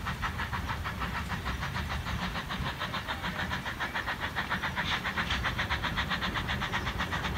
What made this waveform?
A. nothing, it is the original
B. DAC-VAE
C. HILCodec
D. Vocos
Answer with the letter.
A